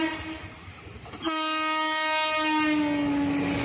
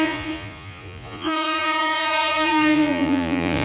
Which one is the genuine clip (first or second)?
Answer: first